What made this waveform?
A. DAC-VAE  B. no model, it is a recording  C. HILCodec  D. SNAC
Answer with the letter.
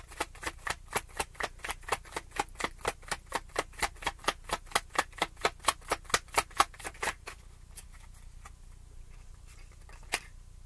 B